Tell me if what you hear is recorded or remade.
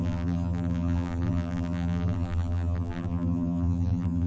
remade